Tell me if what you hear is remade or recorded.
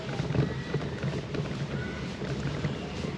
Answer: recorded